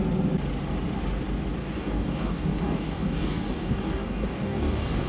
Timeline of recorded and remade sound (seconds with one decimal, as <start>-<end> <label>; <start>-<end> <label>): 0.0-1.6 recorded; 1.6-5.1 remade